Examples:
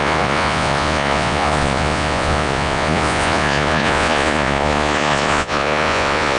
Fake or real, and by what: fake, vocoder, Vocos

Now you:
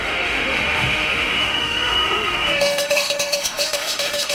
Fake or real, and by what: fake, autoencoder, DAC-VAE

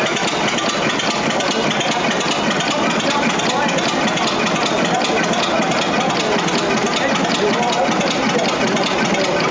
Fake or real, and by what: real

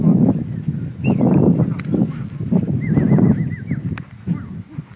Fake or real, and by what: real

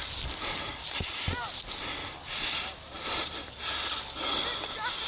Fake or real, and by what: real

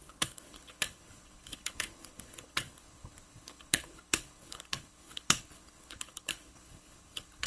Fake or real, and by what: fake, codec, HILCodec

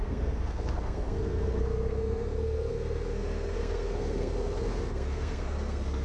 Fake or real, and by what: fake, codec, SNAC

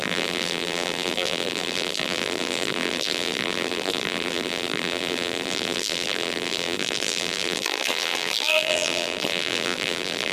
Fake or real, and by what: fake, vocoder, BigVGAN v2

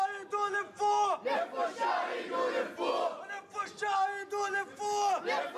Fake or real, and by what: real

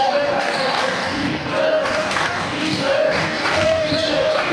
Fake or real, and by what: fake, codec, DAC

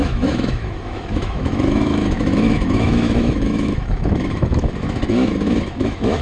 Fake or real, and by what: fake, autoencoder, DAC-VAE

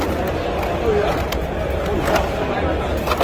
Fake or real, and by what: real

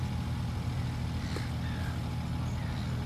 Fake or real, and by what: real